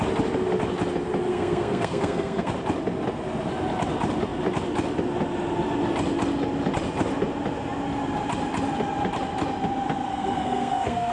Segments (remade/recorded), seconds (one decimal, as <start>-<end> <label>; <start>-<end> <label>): 0.0-1.3 recorded; 1.3-2.5 remade; 2.5-10.1 recorded; 10.1-11.1 remade